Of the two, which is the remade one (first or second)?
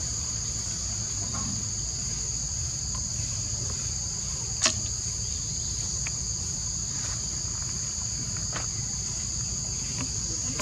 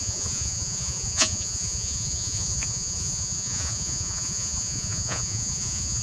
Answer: second